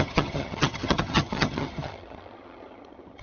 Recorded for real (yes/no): no